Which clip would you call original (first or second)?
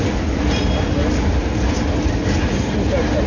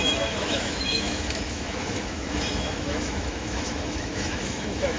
first